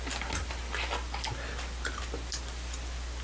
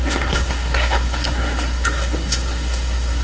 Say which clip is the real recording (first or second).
first